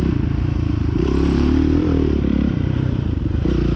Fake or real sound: fake